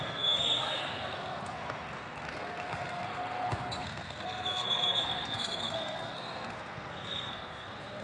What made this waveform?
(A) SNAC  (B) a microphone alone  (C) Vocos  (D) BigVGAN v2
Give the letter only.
A